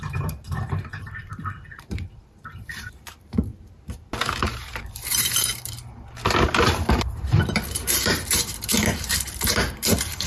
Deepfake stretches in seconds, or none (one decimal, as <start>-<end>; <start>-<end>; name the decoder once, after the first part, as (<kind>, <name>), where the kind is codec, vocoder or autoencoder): 0.0-3.5 (vocoder, BigVGAN v2); 4.4-10.3